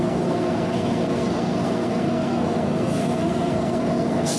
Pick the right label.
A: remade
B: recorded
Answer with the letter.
A